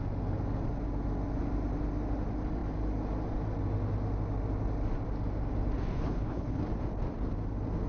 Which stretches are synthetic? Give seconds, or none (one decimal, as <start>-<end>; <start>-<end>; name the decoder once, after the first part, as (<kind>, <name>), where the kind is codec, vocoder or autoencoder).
5.9-6.6 (codec, HILCodec)